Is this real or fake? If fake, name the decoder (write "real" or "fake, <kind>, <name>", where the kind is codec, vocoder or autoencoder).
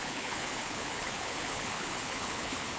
fake, codec, HILCodec